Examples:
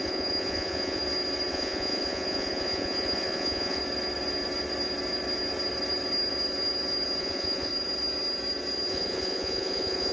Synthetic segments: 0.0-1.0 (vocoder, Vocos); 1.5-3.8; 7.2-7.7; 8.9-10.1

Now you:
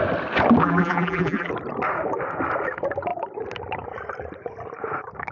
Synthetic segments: 0.6-1.5 (vocoder, BigVGAN v2)

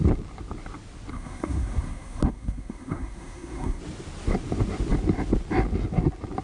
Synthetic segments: 1.1-3.8 (codec, SNAC)

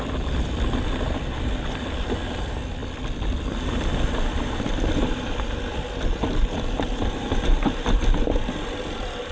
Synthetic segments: none

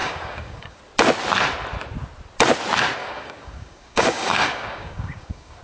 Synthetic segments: 0.0-0.8 (codec, DAC); 3.0-5.6

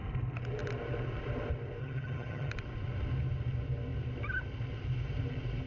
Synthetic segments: 1.8-2.5 (vocoder, HiFi-GAN)